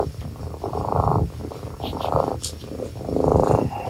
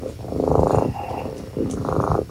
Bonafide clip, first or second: second